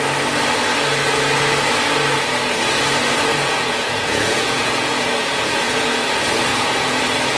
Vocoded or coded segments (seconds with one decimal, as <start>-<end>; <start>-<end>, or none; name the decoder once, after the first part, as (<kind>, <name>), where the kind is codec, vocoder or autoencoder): 3.3-5.9 (vocoder, Vocos); 6.5-7.0